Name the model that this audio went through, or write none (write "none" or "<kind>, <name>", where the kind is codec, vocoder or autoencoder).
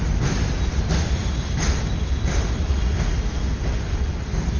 none